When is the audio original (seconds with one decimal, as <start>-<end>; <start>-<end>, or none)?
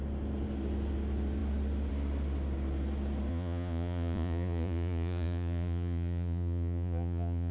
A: 0.0-3.3